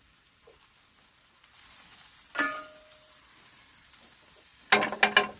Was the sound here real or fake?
real